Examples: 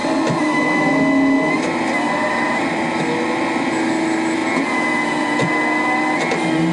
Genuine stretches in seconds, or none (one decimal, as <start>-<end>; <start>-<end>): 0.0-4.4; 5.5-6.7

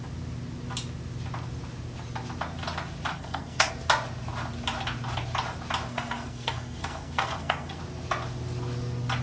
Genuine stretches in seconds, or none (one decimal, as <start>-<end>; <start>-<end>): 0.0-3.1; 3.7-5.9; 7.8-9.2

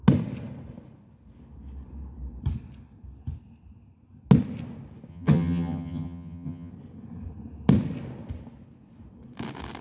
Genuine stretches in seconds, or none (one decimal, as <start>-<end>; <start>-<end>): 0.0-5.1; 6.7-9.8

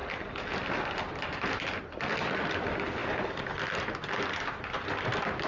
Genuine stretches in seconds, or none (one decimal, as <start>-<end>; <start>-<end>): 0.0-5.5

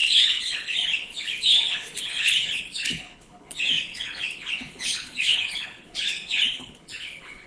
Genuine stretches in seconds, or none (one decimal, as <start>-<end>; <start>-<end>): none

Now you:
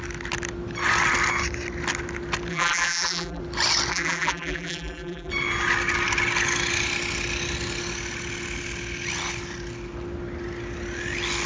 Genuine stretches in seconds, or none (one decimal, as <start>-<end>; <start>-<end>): 0.0-2.5; 3.4-3.9; 5.3-11.5

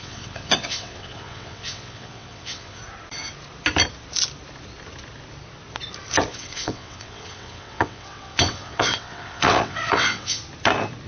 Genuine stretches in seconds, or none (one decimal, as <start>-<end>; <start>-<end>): 2.8-6.3; 10.4-11.1